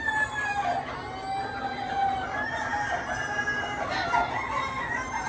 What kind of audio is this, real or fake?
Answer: real